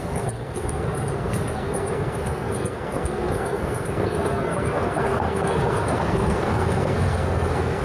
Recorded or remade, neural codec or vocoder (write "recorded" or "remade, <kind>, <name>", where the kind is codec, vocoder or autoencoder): remade, codec, SNAC